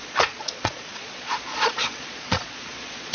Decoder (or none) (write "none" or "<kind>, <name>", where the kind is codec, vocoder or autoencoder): vocoder, Vocos